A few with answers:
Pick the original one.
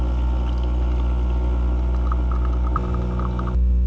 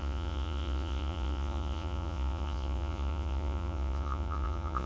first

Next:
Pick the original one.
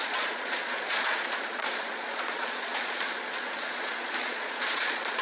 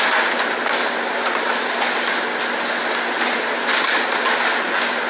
second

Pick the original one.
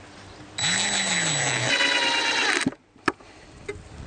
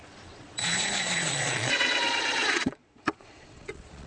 first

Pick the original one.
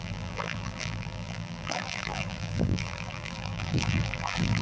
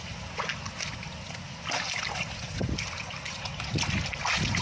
second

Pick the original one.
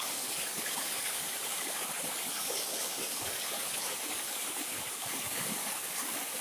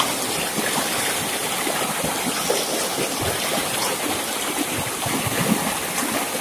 second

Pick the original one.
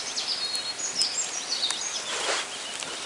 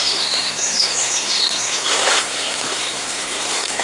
first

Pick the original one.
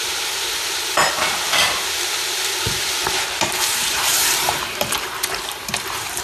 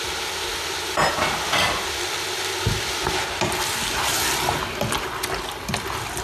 second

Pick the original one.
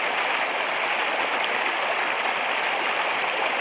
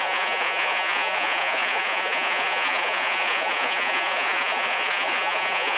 first